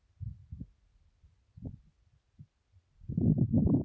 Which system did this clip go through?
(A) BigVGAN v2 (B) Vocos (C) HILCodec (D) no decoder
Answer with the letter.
D